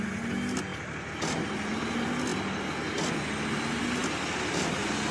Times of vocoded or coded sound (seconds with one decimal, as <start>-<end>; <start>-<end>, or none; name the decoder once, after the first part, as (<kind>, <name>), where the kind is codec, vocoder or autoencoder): none